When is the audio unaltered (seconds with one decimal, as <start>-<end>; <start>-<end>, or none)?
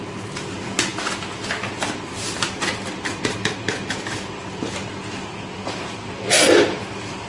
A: 0.0-7.3